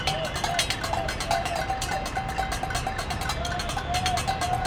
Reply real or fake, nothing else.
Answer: real